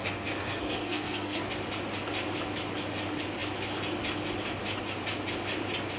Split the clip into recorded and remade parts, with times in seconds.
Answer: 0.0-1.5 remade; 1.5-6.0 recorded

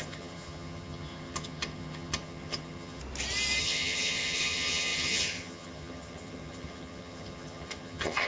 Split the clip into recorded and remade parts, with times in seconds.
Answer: 0.0-3.0 remade; 3.0-3.6 recorded; 3.6-8.3 remade

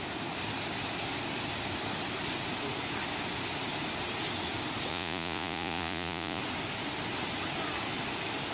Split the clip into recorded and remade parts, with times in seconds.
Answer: 0.0-4.9 recorded; 4.9-6.4 remade; 6.4-8.5 recorded

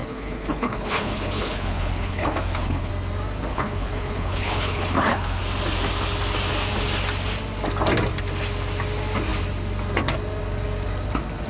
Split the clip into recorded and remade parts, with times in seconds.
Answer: 0.0-2.9 remade; 2.9-3.5 recorded; 3.5-5.4 remade; 5.4-11.5 recorded

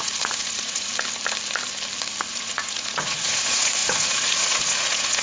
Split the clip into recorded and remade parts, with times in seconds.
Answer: 0.0-0.9 remade; 0.9-2.3 recorded; 2.3-5.2 remade

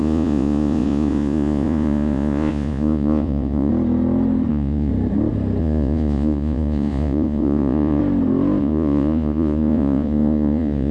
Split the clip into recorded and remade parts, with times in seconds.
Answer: 0.0-3.7 remade; 3.7-4.5 recorded; 4.5-4.9 remade; 4.9-5.6 recorded; 5.6-8.0 remade; 8.0-8.6 recorded; 8.6-10.9 remade

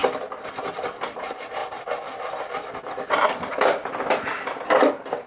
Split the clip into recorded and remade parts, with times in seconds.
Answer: 0.0-0.5 remade; 0.5-1.6 recorded; 1.6-2.7 remade; 2.7-5.3 recorded